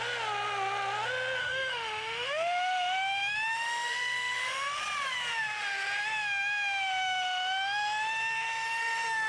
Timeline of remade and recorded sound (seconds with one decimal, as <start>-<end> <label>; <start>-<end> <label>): 0.0-1.4 recorded; 1.4-4.8 remade; 4.8-6.0 recorded; 6.0-9.3 remade